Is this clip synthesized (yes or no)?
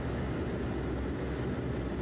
no